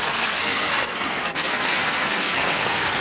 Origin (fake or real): fake